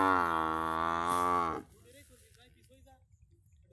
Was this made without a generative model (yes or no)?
yes